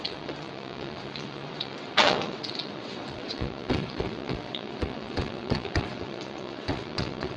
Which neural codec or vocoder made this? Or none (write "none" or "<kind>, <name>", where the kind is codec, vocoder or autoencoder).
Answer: vocoder, WaveNeXt